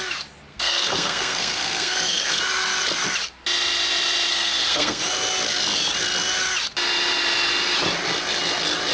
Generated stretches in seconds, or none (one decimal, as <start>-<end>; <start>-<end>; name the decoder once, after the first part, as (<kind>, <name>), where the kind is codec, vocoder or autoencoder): 0.5-2.4 (codec, SNAC); 4.3-5.0